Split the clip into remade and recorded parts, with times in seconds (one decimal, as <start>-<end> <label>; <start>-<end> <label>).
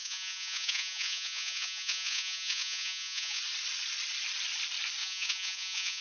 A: 0.0-3.4 remade; 3.4-5.0 recorded; 5.0-6.0 remade